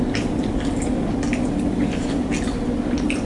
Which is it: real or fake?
real